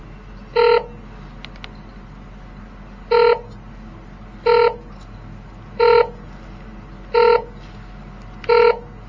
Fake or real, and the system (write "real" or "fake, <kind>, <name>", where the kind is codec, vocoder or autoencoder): real